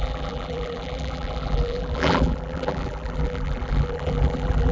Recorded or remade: remade